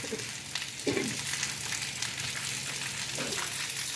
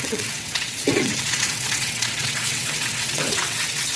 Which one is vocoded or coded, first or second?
second